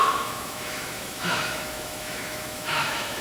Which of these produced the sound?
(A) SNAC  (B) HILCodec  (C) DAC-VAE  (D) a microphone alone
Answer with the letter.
C